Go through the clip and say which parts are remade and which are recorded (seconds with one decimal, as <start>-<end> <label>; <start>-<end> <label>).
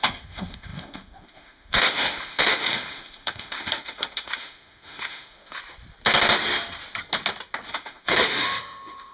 0.0-5.6 remade; 5.6-7.7 recorded; 7.7-9.1 remade